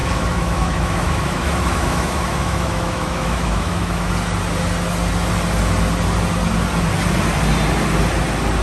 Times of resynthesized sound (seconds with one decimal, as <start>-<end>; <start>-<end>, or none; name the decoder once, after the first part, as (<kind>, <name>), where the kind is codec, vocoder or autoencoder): 0.0-4.1 (autoencoder, DAC-VAE)